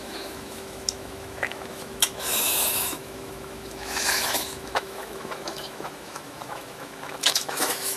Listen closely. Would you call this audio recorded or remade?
remade